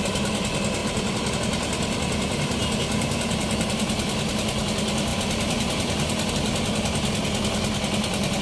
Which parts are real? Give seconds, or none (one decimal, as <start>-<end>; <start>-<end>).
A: 0.0-0.8; 1.3-2.6; 3.7-5.1; 6.3-8.4